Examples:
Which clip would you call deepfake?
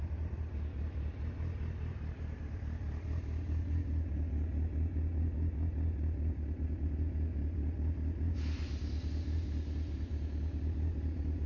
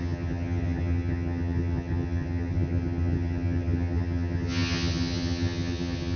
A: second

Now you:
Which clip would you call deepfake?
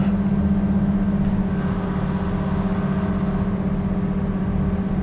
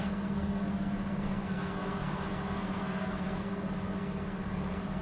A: second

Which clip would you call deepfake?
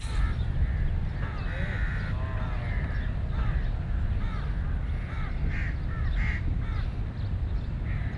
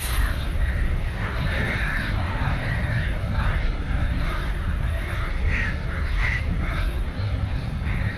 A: second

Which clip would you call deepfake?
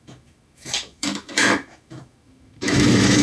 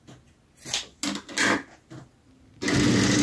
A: first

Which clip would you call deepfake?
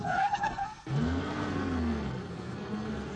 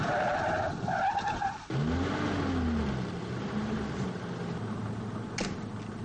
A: first